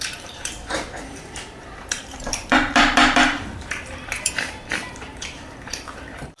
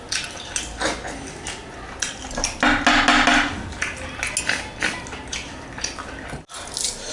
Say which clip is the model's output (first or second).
first